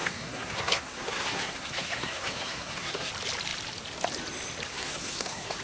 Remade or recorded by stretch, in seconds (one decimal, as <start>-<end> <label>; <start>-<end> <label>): 0.0-3.1 remade; 3.1-4.7 recorded; 4.7-5.6 remade